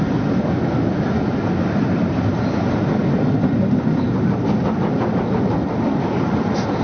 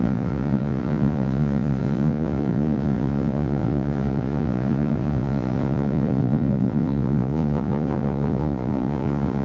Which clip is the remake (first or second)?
second